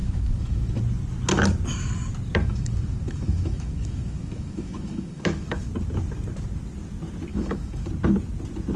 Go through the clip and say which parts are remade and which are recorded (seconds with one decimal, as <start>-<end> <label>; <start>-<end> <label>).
0.0-0.8 remade; 0.8-2.4 recorded; 2.4-5.7 remade; 5.7-7.3 recorded; 7.3-7.9 remade; 7.9-8.8 recorded